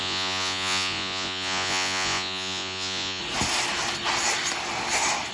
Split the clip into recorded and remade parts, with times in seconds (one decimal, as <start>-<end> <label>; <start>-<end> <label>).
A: 0.0-3.2 remade; 3.2-5.3 recorded